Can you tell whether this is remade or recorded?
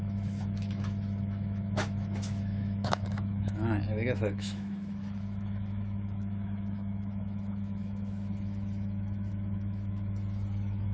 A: remade